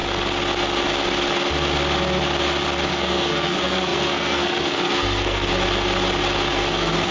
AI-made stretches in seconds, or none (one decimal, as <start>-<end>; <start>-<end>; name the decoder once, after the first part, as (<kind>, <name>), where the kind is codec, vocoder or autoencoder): 2.9-5.5 (codec, SNAC); 6.5-7.1